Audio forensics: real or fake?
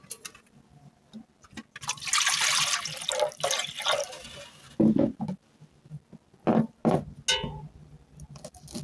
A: real